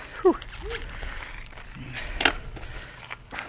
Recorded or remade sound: recorded